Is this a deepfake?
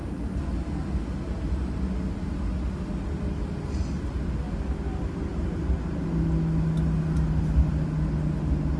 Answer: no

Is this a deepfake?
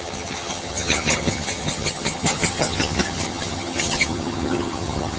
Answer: yes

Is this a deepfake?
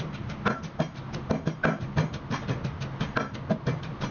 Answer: no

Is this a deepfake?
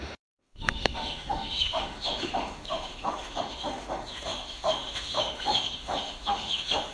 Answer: yes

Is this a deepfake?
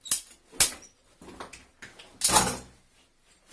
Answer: no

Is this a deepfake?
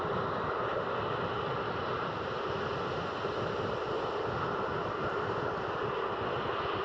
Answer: no